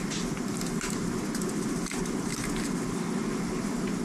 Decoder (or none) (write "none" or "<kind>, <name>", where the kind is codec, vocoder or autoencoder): none